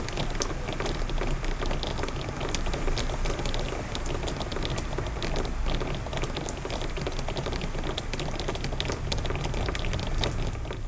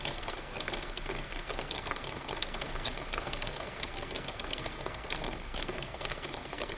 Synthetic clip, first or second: second